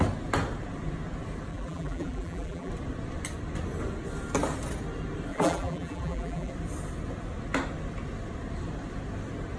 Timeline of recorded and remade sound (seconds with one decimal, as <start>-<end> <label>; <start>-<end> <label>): 0.0-1.5 recorded; 1.5-2.7 remade; 2.7-5.3 recorded; 5.3-6.5 remade; 6.5-9.6 recorded